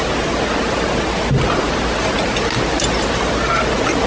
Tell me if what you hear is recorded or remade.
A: recorded